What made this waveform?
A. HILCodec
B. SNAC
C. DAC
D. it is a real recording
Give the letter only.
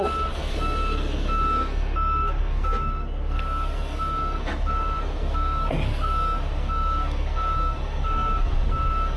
B